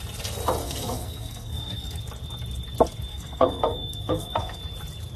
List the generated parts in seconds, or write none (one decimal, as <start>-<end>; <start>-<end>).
0.6-2.0; 3.1-4.6